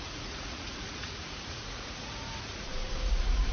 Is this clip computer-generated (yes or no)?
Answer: yes